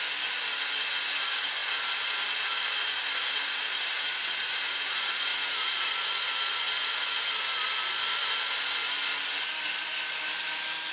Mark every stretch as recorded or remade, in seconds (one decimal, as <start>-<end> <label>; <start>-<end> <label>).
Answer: 0.0-5.3 recorded; 5.3-6.1 remade; 6.1-10.9 recorded